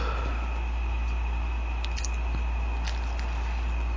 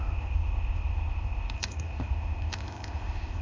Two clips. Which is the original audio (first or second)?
first